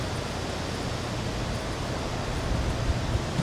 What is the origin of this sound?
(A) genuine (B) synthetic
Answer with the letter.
A